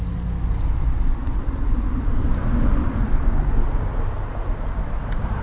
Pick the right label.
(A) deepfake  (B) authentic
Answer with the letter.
B